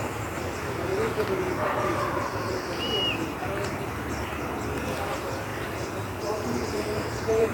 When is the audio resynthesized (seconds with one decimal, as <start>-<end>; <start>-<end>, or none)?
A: 0.0-0.9; 5.0-5.5; 6.0-7.5